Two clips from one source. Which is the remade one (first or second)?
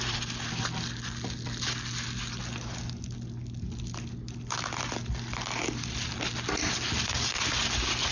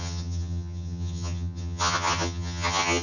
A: second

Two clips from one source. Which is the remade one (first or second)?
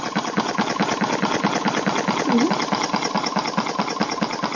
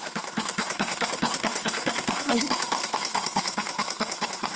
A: second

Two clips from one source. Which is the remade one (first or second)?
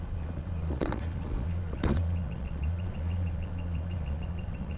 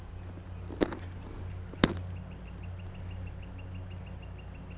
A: first